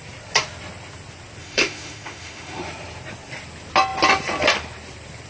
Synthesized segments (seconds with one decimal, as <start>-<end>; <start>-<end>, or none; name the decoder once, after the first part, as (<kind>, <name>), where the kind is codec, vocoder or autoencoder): 1.4-2.6 (autoencoder, DAC-VAE)